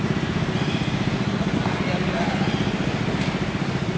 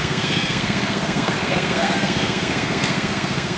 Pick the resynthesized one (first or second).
second